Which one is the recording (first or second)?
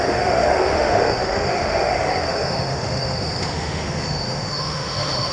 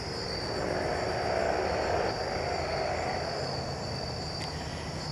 second